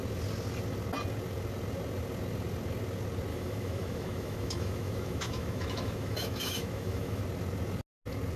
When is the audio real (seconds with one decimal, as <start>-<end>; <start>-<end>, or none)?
0.0-3.3; 7.2-8.4